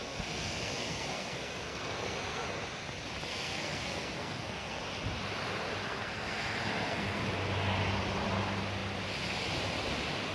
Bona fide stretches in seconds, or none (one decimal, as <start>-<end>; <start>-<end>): 2.6-3.3; 4.8-5.8; 7.2-10.3